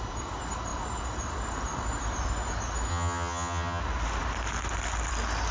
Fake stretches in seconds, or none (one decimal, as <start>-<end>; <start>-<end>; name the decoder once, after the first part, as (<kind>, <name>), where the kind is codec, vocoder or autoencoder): 2.9-3.8 (vocoder, HiFi-GAN)